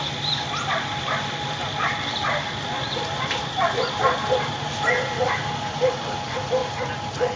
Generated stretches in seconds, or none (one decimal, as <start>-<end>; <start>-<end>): none

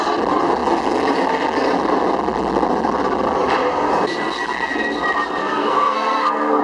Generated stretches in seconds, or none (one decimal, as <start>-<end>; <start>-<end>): 5.4-6.6

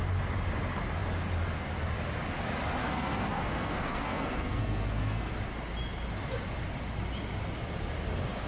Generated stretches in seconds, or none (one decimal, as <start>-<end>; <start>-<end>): 2.8-5.3

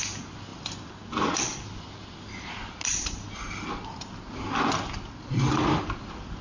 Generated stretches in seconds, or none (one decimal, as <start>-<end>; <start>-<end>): none

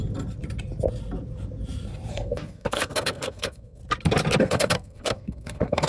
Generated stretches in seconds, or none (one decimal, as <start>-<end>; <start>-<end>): 2.1-3.8; 4.4-5.9

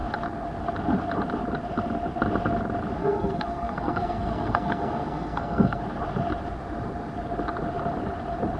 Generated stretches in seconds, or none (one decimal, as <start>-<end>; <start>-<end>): 3.0-5.8

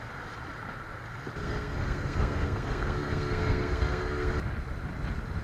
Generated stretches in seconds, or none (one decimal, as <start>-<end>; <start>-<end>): 1.4-4.3

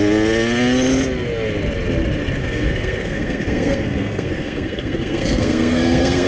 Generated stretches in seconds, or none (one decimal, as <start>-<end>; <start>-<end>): 2.4-6.3